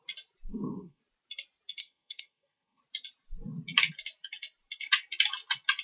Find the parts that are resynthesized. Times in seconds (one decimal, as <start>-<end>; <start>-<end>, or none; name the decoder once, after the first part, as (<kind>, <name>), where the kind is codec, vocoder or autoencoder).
0.5-1.0 (codec, SNAC); 1.8-2.8